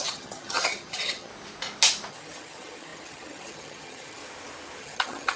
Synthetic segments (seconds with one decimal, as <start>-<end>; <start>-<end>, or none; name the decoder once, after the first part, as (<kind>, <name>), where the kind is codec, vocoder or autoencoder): 0.0-1.3 (vocoder, HiFi-GAN); 2.1-4.2; 4.8-5.4